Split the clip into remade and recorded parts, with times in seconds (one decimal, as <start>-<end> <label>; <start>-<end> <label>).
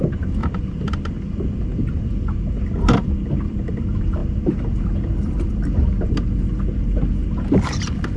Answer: 0.0-0.4 recorded; 0.4-3.1 remade; 3.1-4.2 recorded; 4.2-6.1 remade; 6.1-8.2 recorded